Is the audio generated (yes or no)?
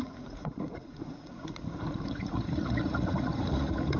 yes